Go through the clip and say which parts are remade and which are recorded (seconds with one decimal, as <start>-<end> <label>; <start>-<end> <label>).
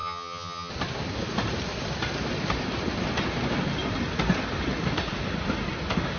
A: 0.0-0.7 remade; 0.7-6.2 recorded